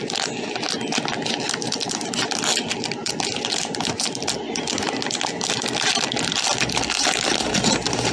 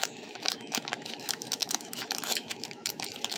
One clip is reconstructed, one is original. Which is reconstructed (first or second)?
second